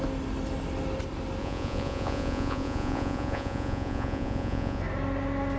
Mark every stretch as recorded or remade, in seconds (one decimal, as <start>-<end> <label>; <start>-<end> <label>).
0.0-1.4 recorded; 1.4-4.8 remade; 4.8-5.6 recorded